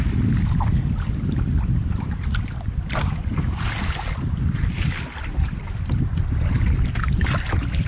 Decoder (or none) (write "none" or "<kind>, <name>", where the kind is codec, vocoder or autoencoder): none